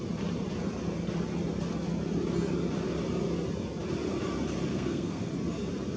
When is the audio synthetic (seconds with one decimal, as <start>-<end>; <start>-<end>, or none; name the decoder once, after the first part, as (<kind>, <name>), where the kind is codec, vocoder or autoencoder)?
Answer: 4.7-5.3 (codec, SNAC)